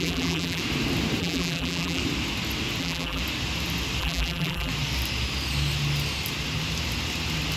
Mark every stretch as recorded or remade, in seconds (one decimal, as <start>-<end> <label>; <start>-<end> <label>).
0.0-0.6 remade; 0.6-1.2 recorded; 1.2-2.0 remade; 2.0-2.8 recorded; 2.8-3.2 remade; 3.2-4.0 recorded; 4.0-4.7 remade; 4.7-7.6 recorded